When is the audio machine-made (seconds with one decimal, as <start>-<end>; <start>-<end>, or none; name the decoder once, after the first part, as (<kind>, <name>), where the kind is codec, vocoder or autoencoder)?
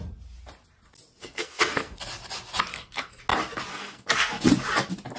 1.2-2.0 (codec, SNAC); 2.7-3.2; 3.7-4.5